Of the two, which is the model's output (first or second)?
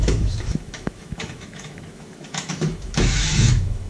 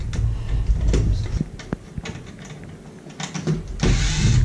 first